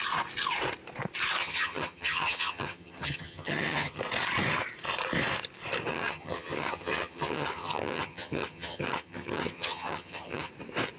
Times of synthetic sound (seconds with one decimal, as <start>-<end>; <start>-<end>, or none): 1.4-4.0; 5.9-10.5